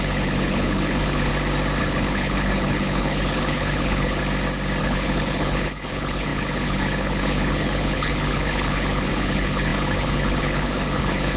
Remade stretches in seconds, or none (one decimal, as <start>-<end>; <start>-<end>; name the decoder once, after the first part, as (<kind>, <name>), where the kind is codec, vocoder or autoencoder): 0.0-1.3 (codec, HILCodec); 1.8-4.2; 4.8-11.4